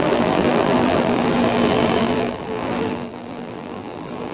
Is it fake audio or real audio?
fake